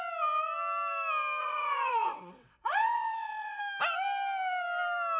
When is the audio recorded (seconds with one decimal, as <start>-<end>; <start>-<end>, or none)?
0.0-1.4; 3.6-5.2